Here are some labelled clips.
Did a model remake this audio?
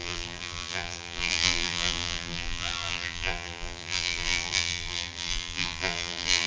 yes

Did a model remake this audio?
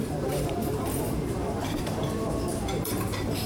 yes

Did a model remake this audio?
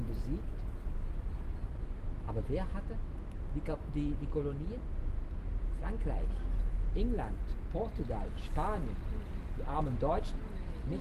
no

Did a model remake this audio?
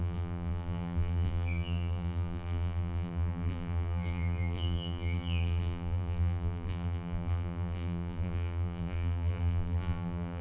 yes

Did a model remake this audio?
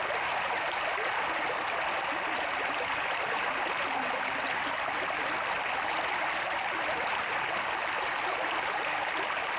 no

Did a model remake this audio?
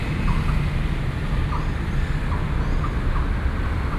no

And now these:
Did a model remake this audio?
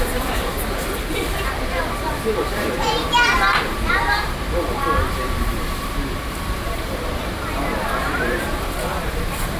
yes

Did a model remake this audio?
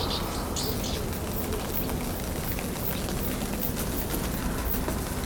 no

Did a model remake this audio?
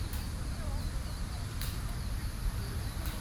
yes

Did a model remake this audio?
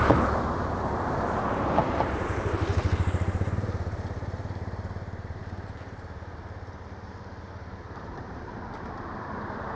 yes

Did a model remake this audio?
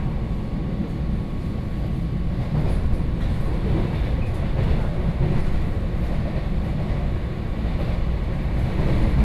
no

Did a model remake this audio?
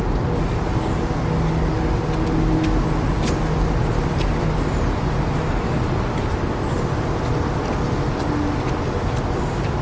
no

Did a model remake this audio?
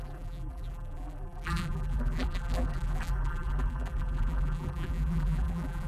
yes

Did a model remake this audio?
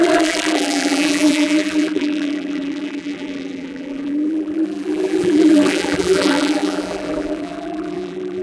yes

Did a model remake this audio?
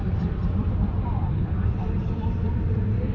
yes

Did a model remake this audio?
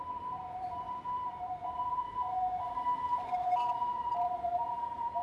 yes